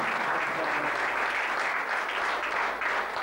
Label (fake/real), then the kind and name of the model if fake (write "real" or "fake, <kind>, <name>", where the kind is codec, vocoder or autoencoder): real